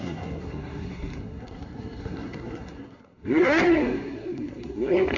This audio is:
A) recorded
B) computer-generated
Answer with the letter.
B